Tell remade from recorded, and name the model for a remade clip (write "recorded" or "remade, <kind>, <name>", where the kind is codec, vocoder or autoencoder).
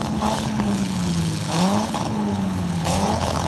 remade, codec, HILCodec